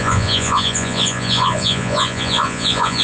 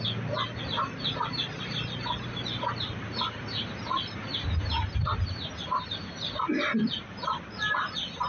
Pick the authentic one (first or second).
second